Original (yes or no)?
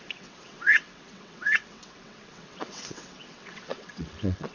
no